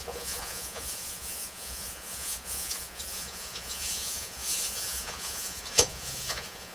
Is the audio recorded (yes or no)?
no